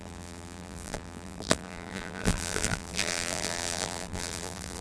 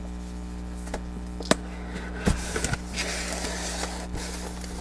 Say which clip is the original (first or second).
second